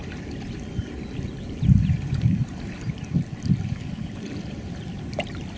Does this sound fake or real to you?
real